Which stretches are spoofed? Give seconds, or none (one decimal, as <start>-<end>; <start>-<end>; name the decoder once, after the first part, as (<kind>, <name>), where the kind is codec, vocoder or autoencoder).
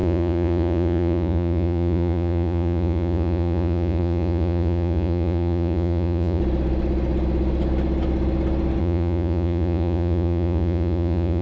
0.0-6.4 (vocoder, Vocos); 8.8-11.4